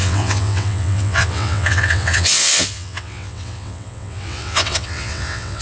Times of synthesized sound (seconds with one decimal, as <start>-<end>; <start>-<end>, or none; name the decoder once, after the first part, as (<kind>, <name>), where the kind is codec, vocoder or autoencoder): 0.0-5.6 (vocoder, WaveNeXt)